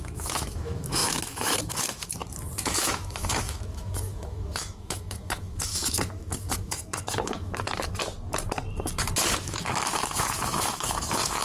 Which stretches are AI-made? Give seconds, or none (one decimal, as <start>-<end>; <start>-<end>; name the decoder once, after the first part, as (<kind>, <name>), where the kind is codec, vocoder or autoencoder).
0.0-2.2 (autoencoder, DAC-VAE); 2.7-8.0; 9.4-11.4